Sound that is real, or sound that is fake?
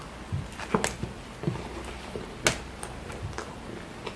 real